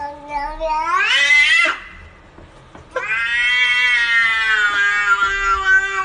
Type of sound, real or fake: real